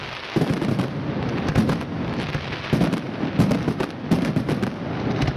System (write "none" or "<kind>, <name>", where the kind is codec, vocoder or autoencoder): none